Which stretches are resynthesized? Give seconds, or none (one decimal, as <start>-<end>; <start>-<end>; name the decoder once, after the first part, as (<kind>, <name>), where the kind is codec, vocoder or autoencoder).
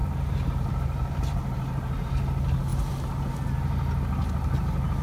0.0-2.1 (vocoder, BigVGAN v2)